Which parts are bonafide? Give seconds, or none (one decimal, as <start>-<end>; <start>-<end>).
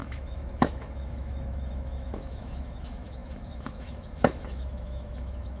none